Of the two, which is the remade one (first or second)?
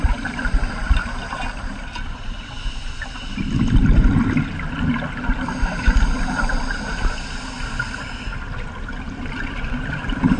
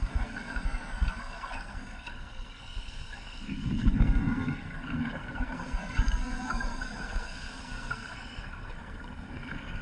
second